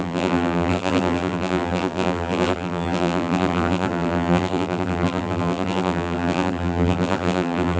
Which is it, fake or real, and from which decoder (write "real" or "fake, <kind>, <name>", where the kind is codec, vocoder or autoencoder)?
fake, vocoder, BigVGAN v2